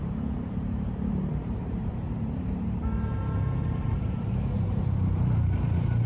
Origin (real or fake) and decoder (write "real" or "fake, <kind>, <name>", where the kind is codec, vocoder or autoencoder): fake, vocoder, BigVGAN v2